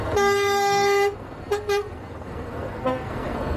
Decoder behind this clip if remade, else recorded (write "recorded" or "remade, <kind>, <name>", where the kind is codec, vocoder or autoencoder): remade, codec, SNAC